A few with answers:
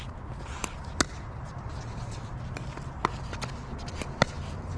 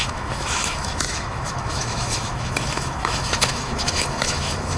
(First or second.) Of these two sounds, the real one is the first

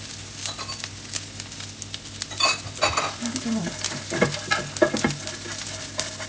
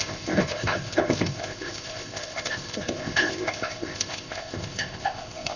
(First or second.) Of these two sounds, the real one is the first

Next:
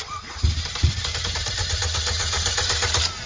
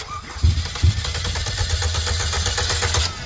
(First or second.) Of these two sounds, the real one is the second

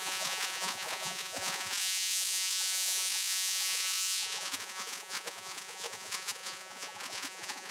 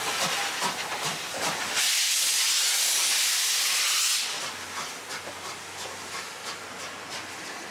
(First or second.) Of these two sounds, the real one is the second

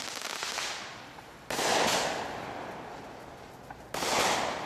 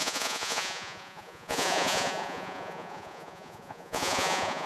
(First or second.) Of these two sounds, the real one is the first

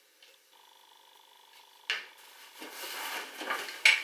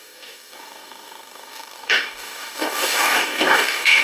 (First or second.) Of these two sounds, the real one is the first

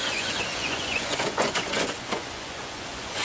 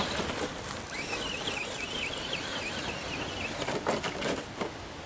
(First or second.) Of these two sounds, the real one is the second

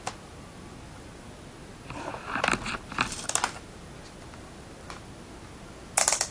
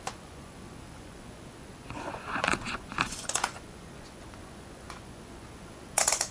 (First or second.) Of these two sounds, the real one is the first